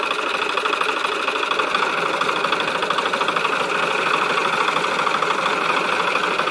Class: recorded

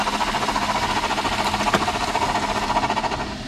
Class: recorded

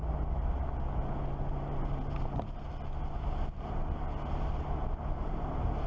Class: recorded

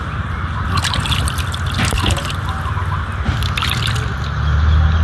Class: recorded